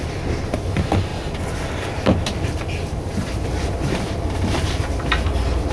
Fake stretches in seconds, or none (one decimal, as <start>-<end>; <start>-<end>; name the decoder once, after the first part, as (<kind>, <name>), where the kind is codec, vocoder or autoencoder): 0.0-5.7 (vocoder, BigVGAN v2)